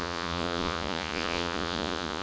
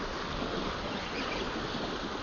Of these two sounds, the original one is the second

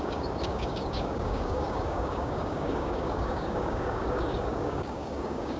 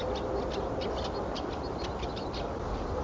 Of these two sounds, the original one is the second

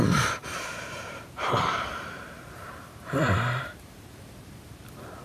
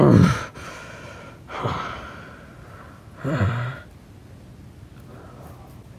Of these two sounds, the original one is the second